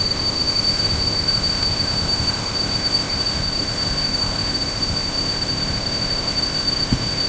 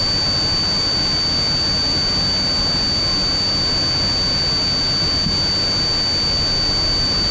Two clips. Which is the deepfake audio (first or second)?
first